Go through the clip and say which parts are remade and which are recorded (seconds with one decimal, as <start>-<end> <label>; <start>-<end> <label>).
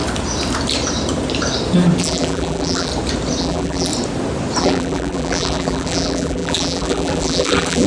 0.0-2.0 recorded; 2.0-2.9 remade; 2.9-3.4 recorded; 3.4-3.9 remade; 3.9-4.6 recorded; 4.6-7.9 remade